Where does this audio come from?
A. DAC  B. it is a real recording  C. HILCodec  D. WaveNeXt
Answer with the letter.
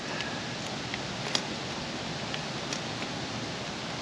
B